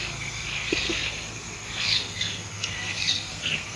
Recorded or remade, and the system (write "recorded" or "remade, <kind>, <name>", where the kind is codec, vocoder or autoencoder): remade, codec, SNAC